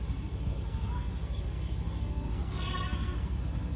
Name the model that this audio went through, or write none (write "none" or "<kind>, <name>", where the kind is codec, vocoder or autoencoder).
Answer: codec, SNAC